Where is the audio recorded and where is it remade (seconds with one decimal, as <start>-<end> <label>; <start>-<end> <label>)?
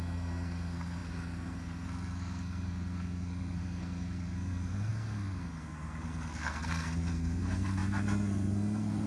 0.0-9.1 remade